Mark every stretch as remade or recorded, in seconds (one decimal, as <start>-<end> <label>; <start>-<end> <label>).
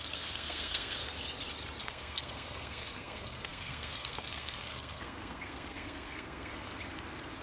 0.0-1.0 remade; 1.0-1.8 recorded; 1.8-6.7 remade; 6.7-7.4 recorded